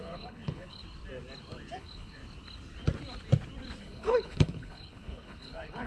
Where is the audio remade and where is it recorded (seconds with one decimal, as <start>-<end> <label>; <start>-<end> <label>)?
0.0-0.8 remade; 0.8-1.8 recorded; 1.8-2.2 remade; 2.2-3.8 recorded; 3.8-5.9 remade